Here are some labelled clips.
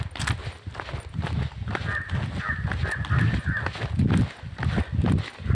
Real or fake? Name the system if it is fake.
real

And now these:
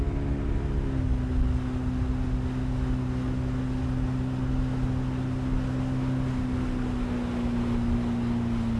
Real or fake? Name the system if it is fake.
real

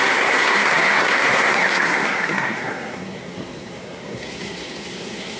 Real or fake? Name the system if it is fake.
fake, codec, SNAC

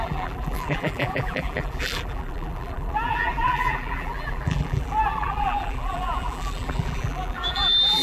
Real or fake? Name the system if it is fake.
fake, vocoder, BigVGAN v2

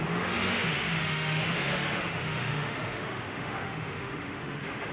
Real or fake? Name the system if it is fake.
fake, autoencoder, DAC-VAE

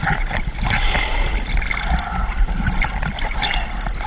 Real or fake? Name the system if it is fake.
real